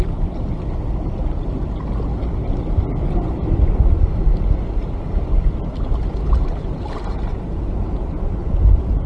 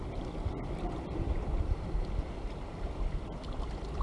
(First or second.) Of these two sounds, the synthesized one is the second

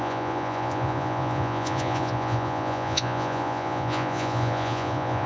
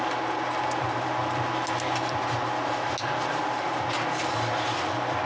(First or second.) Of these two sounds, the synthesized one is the first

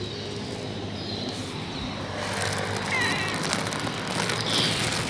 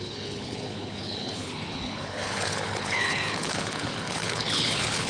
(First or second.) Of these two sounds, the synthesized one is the second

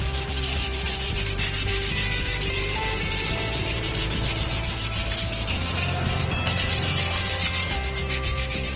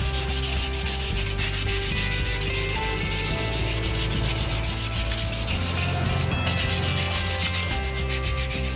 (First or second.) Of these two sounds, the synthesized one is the first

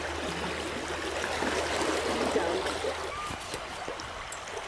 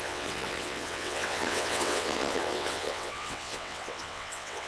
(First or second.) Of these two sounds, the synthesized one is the second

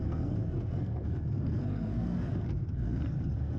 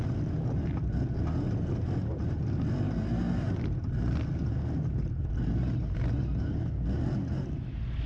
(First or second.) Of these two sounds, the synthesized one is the first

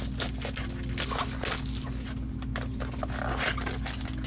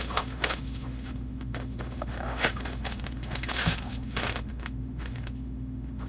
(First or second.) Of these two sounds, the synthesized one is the second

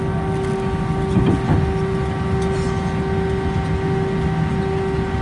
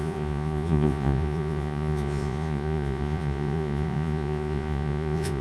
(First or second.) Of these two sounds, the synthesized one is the second